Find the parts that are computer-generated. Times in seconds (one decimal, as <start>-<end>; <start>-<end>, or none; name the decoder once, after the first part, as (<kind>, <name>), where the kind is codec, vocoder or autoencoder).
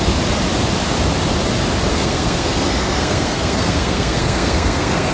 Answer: 1.9-5.1 (codec, SNAC)